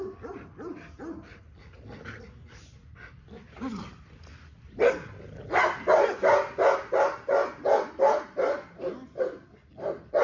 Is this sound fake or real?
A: real